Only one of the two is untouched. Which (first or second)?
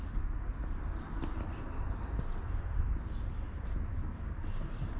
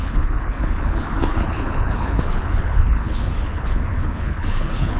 first